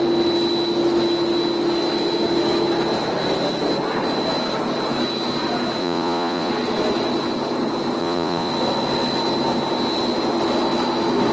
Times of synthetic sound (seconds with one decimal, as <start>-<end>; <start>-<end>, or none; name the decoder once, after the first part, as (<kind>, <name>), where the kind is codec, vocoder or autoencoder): 5.8-6.5 (vocoder, Vocos); 8.0-8.5